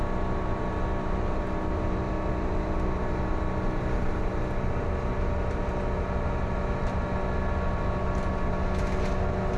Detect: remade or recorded recorded